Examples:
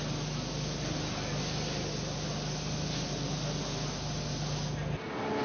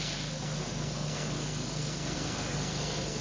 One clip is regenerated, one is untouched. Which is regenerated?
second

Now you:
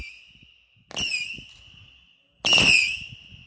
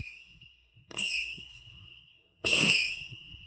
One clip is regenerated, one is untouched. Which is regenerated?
second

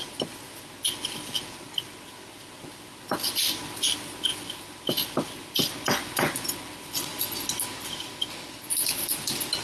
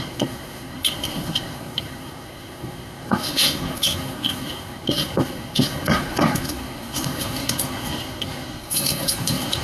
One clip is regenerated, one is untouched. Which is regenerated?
second